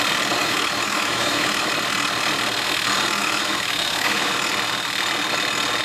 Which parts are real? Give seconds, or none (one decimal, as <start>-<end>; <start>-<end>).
0.0-0.4; 1.7-3.2; 4.3-5.8